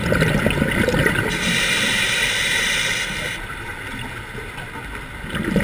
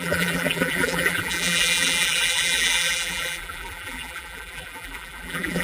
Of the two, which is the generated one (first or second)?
second